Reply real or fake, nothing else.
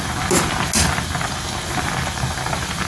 real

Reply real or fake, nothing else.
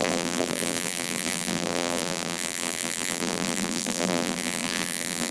fake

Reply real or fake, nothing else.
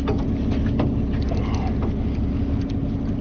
real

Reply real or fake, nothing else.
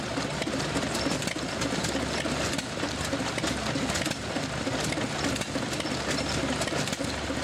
real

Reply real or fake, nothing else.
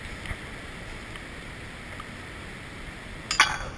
real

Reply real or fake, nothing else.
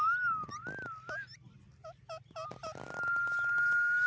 real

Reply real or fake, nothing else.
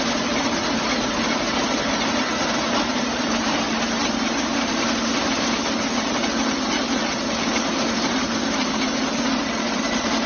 fake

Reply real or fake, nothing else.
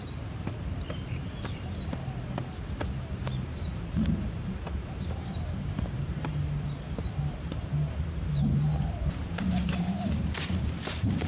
fake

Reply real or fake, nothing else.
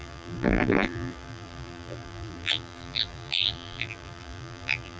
fake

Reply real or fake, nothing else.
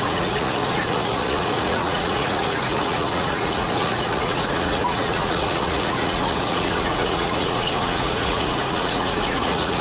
fake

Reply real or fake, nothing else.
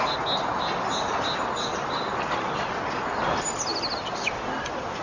real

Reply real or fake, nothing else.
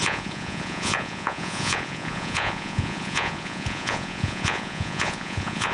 fake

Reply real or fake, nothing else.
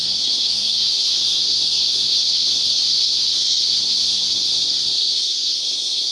fake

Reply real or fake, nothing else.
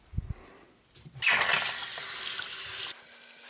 real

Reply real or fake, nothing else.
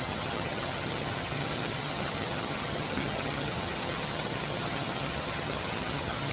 fake